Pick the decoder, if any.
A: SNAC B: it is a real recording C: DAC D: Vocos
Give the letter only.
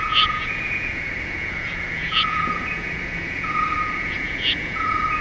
D